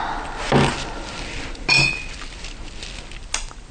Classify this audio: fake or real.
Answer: real